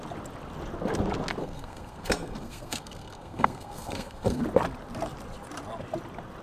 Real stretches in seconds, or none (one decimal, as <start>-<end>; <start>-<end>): 0.0-1.4; 4.4-6.4